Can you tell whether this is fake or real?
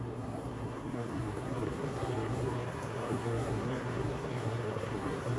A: fake